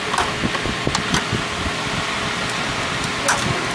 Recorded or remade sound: recorded